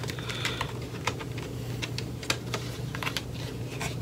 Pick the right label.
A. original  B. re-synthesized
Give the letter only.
A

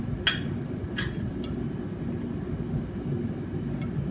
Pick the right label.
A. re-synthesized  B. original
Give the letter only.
B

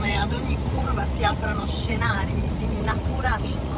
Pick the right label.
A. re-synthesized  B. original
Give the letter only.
A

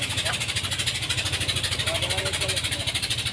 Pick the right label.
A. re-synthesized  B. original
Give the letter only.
B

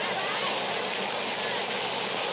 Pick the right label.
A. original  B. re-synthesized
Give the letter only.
A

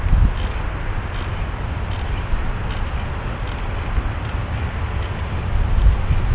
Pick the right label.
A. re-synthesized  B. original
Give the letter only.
B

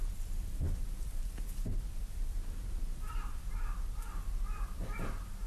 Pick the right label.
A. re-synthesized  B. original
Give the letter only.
A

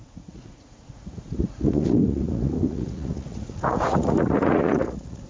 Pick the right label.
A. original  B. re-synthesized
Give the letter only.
B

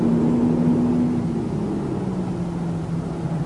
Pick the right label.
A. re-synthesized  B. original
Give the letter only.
B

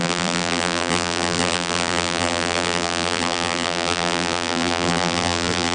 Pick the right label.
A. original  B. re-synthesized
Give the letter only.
B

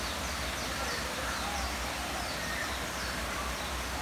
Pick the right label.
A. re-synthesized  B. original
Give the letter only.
B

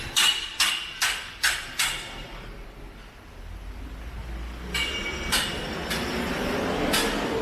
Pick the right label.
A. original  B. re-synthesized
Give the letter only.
A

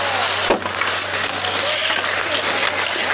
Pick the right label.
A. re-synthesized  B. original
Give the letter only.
B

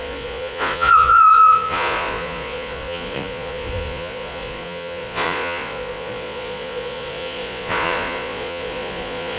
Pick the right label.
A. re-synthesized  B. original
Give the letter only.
A